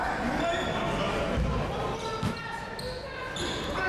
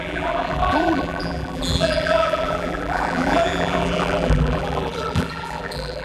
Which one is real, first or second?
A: first